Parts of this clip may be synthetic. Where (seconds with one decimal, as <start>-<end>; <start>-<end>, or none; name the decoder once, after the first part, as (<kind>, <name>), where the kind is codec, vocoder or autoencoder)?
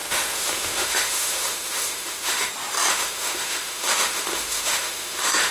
0.0-2.5 (autoencoder, DAC-VAE); 2.9-5.5